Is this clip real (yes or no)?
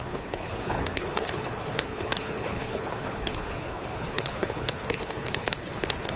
no